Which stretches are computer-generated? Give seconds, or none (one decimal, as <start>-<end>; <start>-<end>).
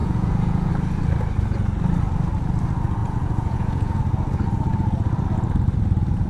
0.0-0.7; 3.0-4.0